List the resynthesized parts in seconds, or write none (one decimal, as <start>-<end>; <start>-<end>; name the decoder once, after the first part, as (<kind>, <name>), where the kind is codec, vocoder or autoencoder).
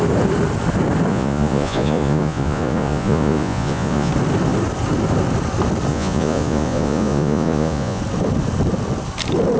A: 1.1-4.1 (vocoder, Vocos); 5.9-8.0